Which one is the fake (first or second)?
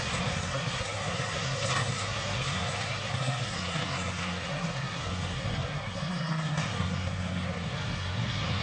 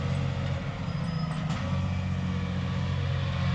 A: first